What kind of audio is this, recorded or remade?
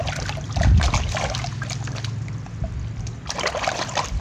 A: recorded